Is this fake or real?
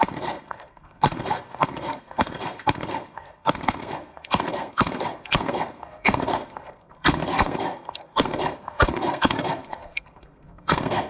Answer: fake